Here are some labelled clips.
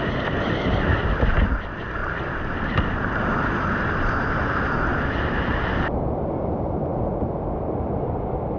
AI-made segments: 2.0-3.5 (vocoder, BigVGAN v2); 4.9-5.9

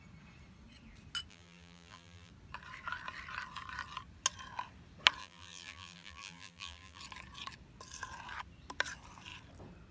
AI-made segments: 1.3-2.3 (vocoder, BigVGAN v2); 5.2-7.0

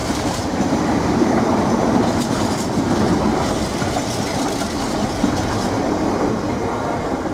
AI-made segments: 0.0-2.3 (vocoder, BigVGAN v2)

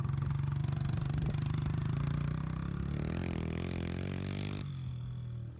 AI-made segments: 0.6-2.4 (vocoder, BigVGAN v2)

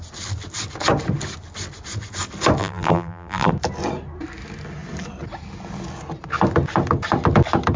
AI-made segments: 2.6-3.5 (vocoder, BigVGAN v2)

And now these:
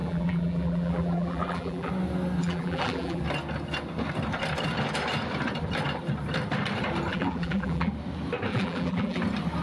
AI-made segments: 0.0-1.9 (vocoder, BigVGAN v2); 2.4-3.2; 7.1-7.9; 8.5-9.2